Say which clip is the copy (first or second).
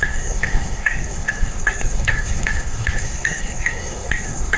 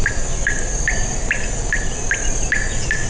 first